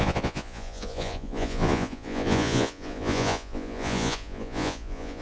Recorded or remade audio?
remade